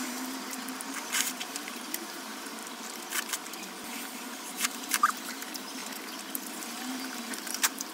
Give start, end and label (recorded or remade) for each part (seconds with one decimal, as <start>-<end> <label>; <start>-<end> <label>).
0.0-2.6 remade; 2.6-3.8 recorded; 3.8-5.8 remade; 5.8-6.5 recorded; 6.5-7.9 remade